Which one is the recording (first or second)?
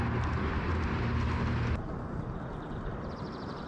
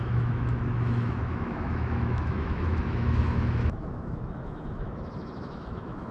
first